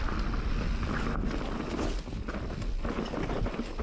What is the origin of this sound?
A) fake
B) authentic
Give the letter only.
B